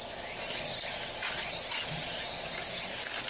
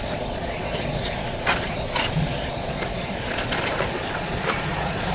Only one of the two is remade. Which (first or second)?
second